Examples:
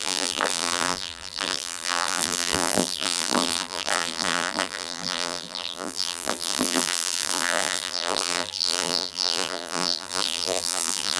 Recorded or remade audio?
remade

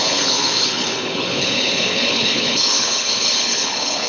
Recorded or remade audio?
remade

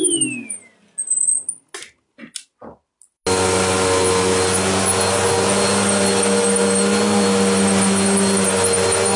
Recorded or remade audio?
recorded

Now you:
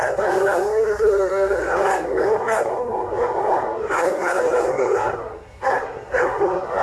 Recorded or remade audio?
remade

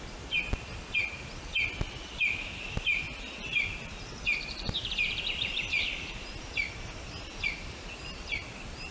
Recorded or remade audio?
recorded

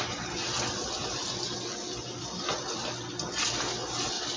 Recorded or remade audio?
recorded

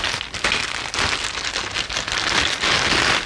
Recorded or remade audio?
recorded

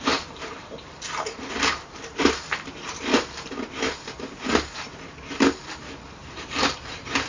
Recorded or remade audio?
remade